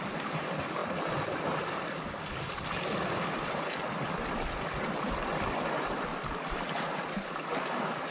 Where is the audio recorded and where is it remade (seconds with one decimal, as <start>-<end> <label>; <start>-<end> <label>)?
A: 0.0-6.1 remade; 6.1-8.1 recorded